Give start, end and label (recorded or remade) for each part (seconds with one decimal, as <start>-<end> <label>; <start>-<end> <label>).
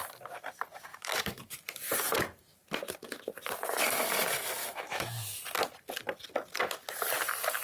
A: 0.0-0.9 recorded; 0.9-1.5 remade; 1.5-4.6 recorded; 4.6-5.4 remade; 5.4-7.6 recorded